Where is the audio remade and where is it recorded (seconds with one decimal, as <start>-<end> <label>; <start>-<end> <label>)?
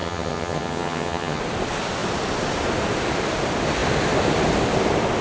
0.0-1.4 remade; 1.4-5.2 recorded